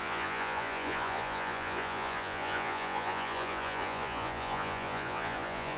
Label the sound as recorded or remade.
remade